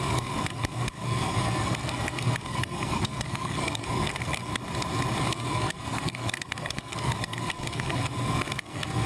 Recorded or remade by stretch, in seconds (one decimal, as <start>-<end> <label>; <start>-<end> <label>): 0.0-4.5 remade; 4.5-5.2 recorded; 5.2-9.1 remade